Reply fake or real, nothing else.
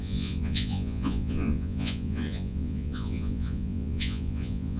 fake